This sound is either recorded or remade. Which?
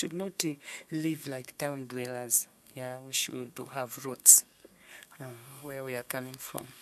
remade